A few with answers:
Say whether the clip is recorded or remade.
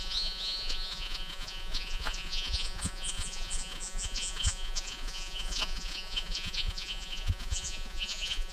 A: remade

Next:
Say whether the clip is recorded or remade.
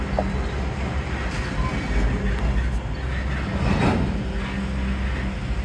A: recorded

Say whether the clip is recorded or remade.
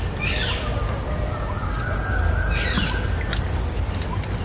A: recorded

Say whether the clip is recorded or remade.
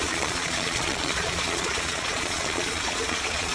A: remade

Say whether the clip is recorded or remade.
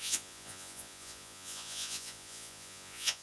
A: remade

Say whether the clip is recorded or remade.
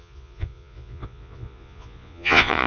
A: remade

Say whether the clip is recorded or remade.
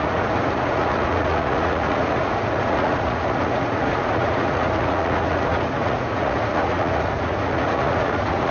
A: remade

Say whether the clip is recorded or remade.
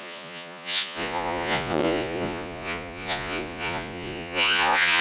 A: remade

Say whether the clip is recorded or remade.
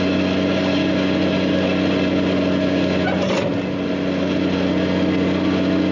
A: recorded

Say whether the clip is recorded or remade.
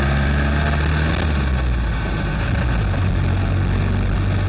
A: recorded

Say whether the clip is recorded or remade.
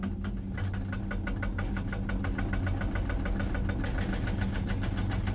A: recorded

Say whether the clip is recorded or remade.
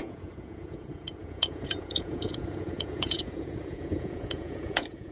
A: remade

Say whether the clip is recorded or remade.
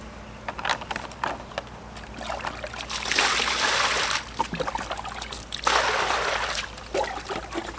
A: recorded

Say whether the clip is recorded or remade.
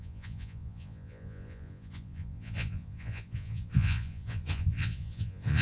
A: remade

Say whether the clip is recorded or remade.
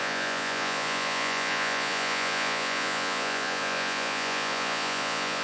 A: remade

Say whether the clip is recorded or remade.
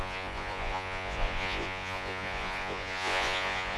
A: remade